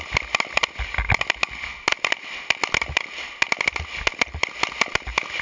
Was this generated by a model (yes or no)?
no